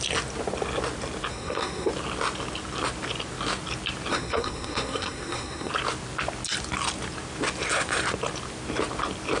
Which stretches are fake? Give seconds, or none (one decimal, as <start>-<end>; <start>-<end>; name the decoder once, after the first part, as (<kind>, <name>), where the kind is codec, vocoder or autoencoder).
1.3-1.9 (codec, SNAC); 4.1-5.7